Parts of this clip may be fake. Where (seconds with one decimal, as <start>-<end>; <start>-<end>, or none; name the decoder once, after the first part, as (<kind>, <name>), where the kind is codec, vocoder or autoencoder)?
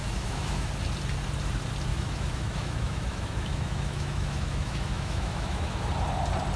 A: 0.0-0.7 (autoencoder, DAC-VAE); 1.9-5.9